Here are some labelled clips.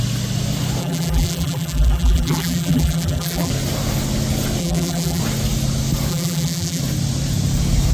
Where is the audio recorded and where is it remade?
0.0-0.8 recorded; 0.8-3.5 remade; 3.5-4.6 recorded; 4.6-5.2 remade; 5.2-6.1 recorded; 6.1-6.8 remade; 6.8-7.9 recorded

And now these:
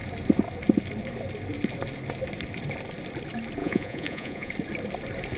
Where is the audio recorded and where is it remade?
0.0-3.6 recorded; 3.6-4.5 remade; 4.5-5.4 recorded

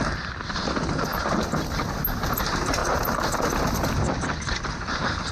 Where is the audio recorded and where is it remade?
0.0-5.3 recorded

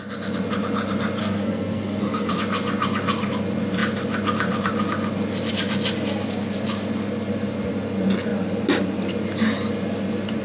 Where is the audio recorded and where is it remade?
0.0-1.2 recorded; 1.2-2.3 remade; 2.3-10.4 recorded

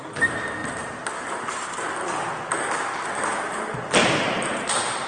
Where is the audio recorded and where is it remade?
0.0-4.0 recorded; 4.0-5.1 remade

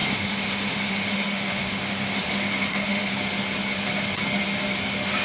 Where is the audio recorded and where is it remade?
0.0-3.1 remade; 3.1-5.2 recorded